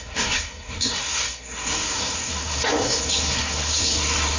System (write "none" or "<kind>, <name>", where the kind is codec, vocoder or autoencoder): codec, SNAC